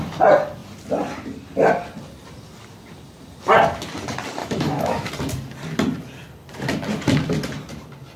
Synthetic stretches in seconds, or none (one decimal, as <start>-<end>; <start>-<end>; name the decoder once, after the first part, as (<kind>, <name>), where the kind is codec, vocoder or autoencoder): 4.4-5.1 (autoencoder, DAC-VAE)